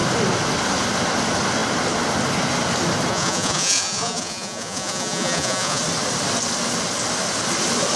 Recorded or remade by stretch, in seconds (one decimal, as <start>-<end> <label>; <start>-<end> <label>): 0.0-3.1 recorded; 3.1-5.8 remade; 5.8-8.0 recorded

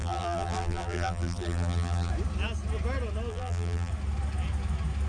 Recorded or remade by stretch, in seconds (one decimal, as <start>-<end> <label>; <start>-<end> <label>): 0.0-2.1 remade; 2.1-3.3 recorded; 3.3-3.9 remade; 3.9-5.1 recorded